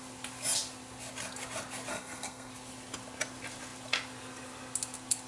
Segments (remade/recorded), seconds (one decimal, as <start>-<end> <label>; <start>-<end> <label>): 0.0-1.9 recorded; 1.9-2.5 remade; 2.5-5.3 recorded